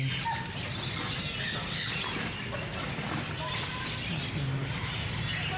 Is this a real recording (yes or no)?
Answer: yes